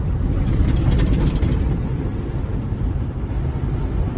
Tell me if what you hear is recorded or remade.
recorded